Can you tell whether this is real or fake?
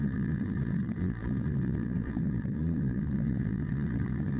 fake